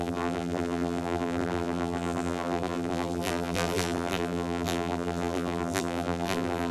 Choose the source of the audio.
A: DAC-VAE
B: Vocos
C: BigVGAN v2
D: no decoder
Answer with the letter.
C